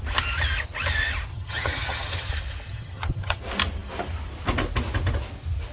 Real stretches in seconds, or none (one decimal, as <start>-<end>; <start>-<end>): 0.0-1.3; 2.3-2.7; 3.4-5.7